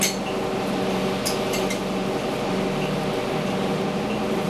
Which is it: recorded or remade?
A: recorded